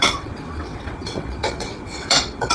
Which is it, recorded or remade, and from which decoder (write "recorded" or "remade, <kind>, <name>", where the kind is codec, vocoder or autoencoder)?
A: remade, vocoder, WaveNeXt